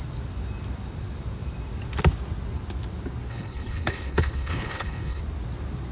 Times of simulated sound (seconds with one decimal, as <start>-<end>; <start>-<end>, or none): 3.3-5.2